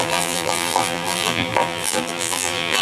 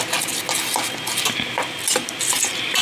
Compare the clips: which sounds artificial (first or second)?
first